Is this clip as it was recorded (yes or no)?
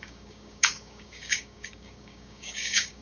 no